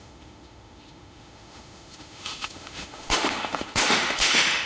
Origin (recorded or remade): remade